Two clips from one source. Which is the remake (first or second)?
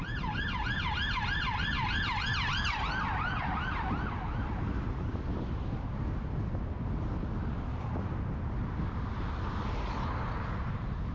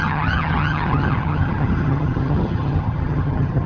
second